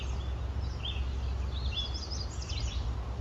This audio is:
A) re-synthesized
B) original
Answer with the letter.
B